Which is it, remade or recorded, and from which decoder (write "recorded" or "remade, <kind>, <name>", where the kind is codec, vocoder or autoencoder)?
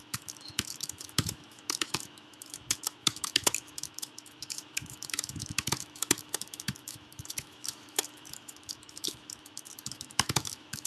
remade, autoencoder, DAC-VAE